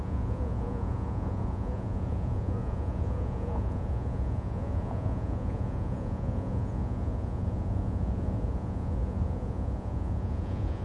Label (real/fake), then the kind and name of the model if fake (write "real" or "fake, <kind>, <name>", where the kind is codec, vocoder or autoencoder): fake, vocoder, Vocos